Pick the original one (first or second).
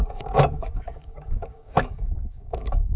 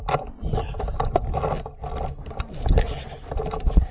second